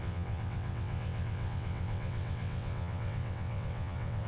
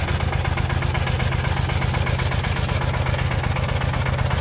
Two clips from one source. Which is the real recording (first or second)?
second